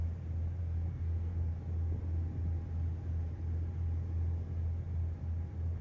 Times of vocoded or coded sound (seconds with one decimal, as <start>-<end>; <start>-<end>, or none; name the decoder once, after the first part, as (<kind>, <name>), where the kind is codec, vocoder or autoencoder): 0.6-1.5 (codec, SNAC)